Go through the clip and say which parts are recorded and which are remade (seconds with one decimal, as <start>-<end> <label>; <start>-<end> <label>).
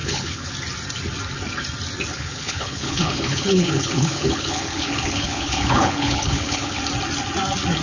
0.0-0.5 remade; 0.5-2.1 recorded; 2.1-6.8 remade; 6.8-7.8 recorded